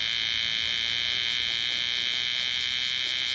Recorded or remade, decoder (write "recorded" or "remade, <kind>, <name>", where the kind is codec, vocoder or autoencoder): recorded